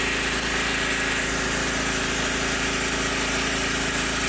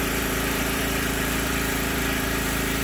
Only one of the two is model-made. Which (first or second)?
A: second